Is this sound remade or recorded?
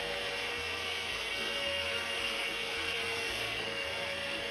remade